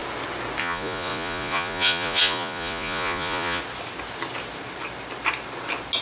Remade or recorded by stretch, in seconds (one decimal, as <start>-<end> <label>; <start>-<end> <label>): 0.0-0.6 recorded; 0.6-3.6 remade; 3.6-6.0 recorded